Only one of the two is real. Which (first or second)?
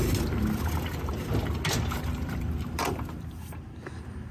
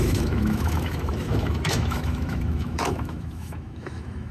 first